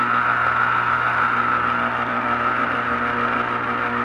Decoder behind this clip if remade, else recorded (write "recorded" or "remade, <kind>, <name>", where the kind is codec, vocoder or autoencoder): recorded